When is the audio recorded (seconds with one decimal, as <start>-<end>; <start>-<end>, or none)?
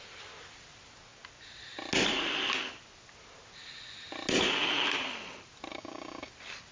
0.0-5.7; 6.3-6.7